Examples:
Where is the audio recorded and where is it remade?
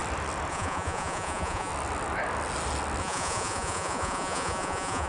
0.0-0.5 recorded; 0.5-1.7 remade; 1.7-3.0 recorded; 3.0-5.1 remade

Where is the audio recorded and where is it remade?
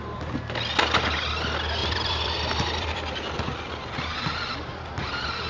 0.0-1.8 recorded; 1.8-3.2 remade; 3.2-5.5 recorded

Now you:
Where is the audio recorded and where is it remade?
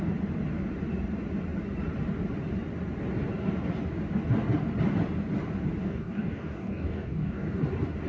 0.0-5.8 recorded; 5.8-7.6 remade; 7.6-8.1 recorded